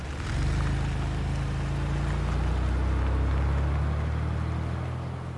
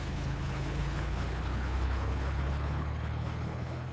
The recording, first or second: first